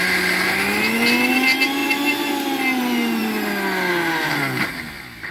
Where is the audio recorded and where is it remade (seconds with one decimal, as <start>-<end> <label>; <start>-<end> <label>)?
0.0-5.3 recorded